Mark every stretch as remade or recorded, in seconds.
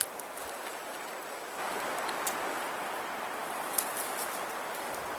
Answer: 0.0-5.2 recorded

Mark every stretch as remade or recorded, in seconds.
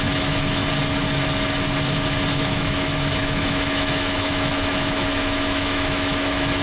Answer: 0.0-0.6 remade; 0.6-2.3 recorded; 2.3-6.6 remade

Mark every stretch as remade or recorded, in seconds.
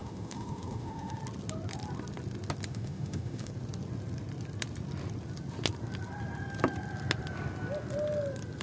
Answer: 0.0-1.2 remade; 1.2-2.7 recorded; 2.7-3.5 remade; 3.5-8.6 recorded